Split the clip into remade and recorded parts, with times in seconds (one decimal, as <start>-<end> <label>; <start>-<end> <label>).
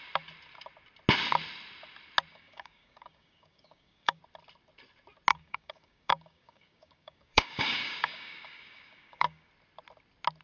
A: 0.0-2.3 recorded; 2.3-4.2 remade; 4.2-5.3 recorded; 5.3-9.5 remade; 9.5-10.4 recorded